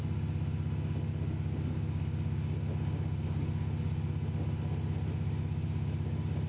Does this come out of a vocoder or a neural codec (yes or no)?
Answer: no